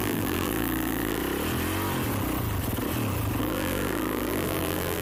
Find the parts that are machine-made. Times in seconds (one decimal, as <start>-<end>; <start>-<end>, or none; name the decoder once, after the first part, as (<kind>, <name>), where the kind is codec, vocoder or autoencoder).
0.0-1.2 (vocoder, BigVGAN v2); 3.4-5.0